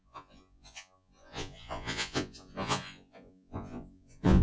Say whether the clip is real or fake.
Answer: fake